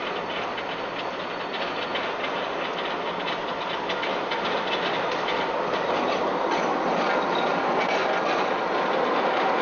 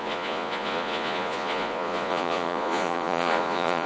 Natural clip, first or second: first